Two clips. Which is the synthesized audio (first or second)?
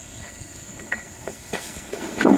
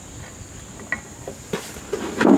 first